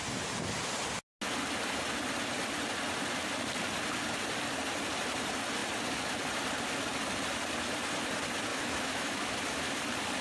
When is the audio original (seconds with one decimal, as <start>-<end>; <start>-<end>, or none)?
0.0-8.5; 9.4-10.2